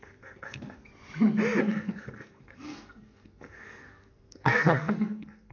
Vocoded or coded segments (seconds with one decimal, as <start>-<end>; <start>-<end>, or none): 0.0-0.9; 1.6-5.5